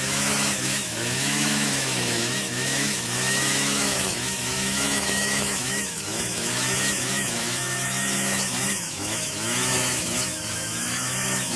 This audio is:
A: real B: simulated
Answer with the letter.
B